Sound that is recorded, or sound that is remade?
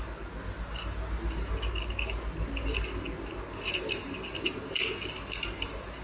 recorded